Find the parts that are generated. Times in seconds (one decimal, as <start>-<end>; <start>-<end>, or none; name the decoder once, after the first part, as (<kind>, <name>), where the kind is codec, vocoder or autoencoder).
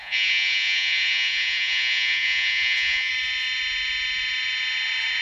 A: 0.0-3.1 (vocoder, Vocos)